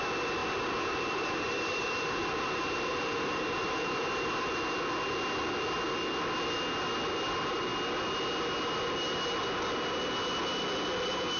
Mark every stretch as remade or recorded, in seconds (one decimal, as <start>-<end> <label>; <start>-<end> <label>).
0.0-0.4 recorded; 0.4-4.4 remade; 4.4-11.4 recorded